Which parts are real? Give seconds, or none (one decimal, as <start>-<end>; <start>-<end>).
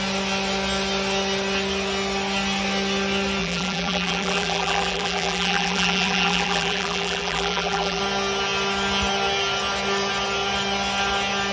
0.0-3.4; 8.0-11.5